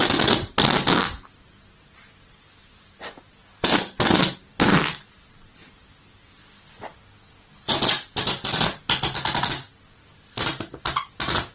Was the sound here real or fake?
real